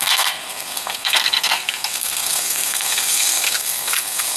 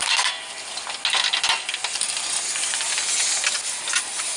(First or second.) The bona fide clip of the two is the second